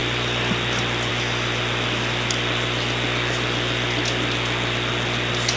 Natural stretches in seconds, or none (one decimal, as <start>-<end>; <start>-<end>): 0.0-5.6